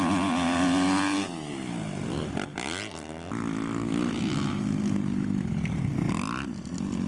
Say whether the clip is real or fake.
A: real